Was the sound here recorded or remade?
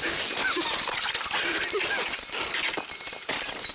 remade